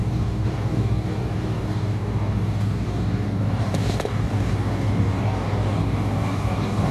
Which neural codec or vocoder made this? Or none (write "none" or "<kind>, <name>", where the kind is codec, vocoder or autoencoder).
codec, DAC